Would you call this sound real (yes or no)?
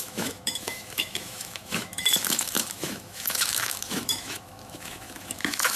no